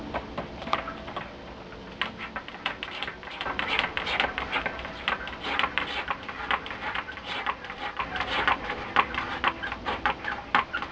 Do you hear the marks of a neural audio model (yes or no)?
yes